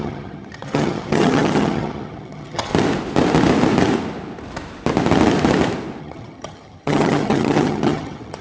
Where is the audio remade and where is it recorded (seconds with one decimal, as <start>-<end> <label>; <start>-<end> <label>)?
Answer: 0.0-2.7 remade; 2.7-6.0 recorded; 6.0-8.4 remade